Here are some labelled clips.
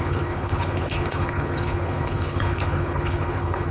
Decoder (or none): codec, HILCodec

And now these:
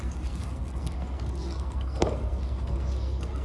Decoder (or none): codec, SNAC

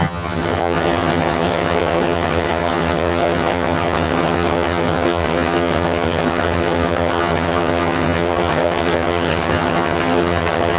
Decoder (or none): vocoder, HiFi-GAN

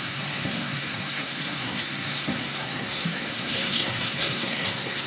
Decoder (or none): codec, SNAC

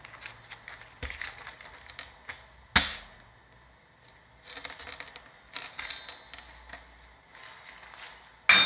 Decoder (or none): none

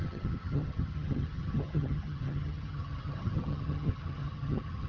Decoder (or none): vocoder, HiFi-GAN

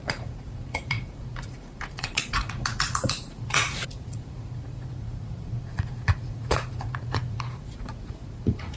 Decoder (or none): vocoder, Vocos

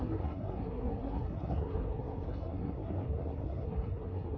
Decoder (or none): codec, SNAC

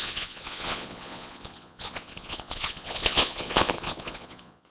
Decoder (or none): vocoder, Vocos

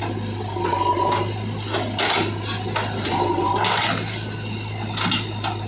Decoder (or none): none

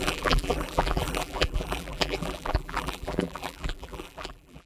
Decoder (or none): vocoder, BigVGAN v2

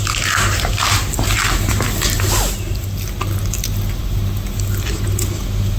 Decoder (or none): none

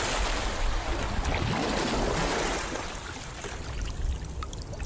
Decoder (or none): none